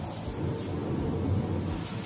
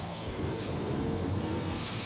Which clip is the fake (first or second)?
second